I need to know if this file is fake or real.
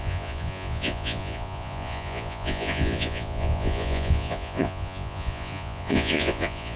fake